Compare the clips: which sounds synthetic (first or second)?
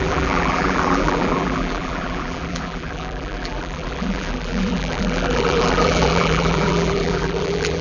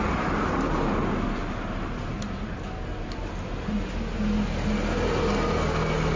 first